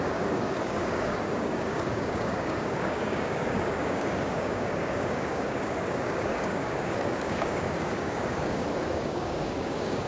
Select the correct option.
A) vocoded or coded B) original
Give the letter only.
A